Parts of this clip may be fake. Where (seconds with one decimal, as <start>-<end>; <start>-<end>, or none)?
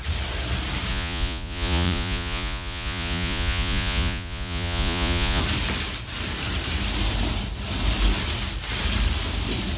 0.9-5.4